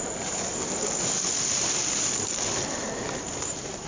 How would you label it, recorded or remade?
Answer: recorded